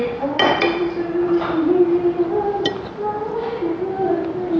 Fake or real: real